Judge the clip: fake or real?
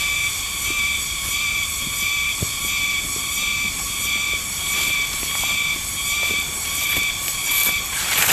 real